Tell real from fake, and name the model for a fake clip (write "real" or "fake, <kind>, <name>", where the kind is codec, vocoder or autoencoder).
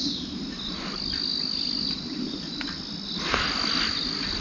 real